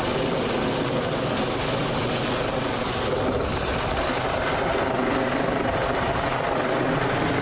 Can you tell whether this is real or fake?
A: real